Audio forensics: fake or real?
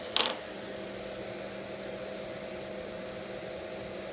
real